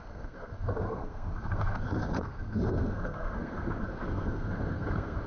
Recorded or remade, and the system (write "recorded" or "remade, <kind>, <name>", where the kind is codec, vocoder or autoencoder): remade, codec, SNAC